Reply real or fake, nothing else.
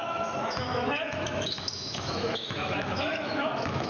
fake